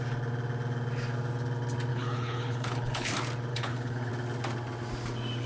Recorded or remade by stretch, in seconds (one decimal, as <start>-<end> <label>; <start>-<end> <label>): 0.0-1.9 recorded; 1.9-3.1 remade; 3.1-3.5 recorded; 3.5-4.1 remade; 4.1-5.5 recorded